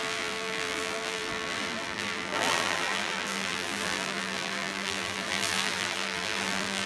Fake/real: fake